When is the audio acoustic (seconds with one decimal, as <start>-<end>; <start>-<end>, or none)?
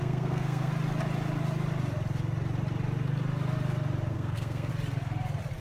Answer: 0.7-4.1; 4.7-5.6